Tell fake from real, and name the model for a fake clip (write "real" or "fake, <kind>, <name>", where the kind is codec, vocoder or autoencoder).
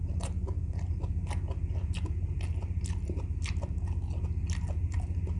real